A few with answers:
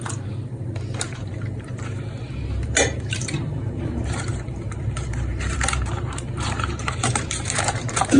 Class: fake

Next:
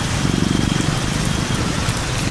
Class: real